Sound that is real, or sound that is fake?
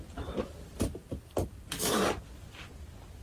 real